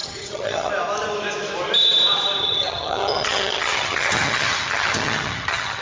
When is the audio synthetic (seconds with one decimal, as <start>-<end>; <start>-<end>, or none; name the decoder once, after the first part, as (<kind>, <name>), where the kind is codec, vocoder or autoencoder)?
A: 0.0-0.7 (vocoder, HiFi-GAN); 2.4-5.8